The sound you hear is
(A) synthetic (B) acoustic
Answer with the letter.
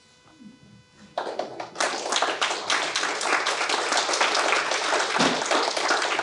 B